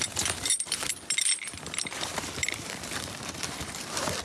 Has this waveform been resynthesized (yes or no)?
yes